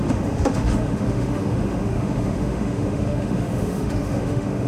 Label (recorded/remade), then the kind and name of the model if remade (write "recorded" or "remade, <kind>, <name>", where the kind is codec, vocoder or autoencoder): remade, autoencoder, DAC-VAE